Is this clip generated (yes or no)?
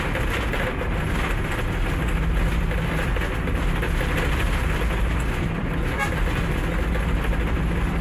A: no